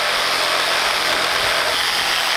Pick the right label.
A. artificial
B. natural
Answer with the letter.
B